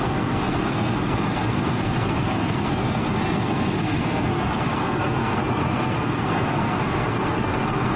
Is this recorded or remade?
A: remade